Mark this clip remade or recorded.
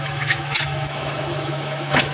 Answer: remade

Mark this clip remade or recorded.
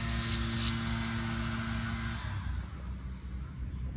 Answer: recorded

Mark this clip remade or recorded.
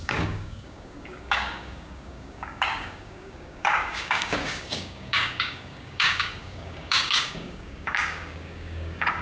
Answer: remade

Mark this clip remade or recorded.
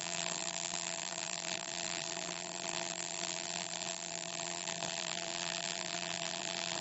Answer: remade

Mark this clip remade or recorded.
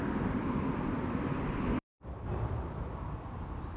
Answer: remade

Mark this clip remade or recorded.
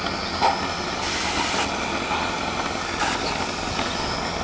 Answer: recorded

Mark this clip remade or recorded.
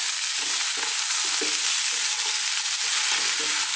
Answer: recorded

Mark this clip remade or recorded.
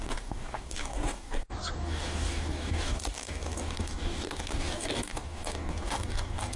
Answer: remade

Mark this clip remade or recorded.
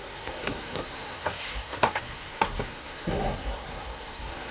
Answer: remade